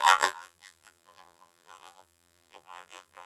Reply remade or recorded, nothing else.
remade